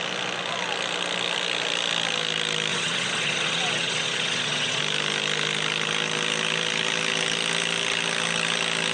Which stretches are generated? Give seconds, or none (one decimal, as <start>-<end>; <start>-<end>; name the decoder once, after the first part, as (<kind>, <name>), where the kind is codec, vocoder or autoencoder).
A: 2.7-4.8 (vocoder, Vocos)